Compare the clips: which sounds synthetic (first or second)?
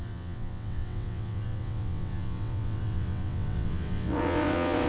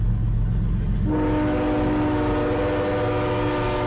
first